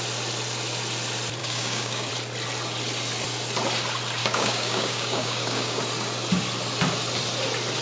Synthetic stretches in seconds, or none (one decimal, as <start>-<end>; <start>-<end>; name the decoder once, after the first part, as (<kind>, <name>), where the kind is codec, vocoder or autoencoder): 1.4-2.1 (codec, DAC); 4.2-5.8